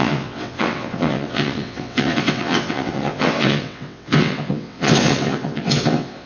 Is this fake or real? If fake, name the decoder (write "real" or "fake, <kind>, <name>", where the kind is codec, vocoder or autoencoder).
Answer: fake, vocoder, WaveNeXt